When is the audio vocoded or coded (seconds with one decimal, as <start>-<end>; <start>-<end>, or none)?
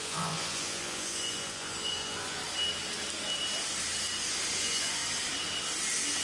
0.0-2.4; 4.6-5.0